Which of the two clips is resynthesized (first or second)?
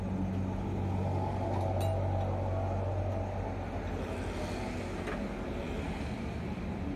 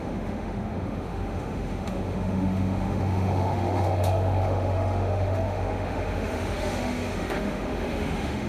second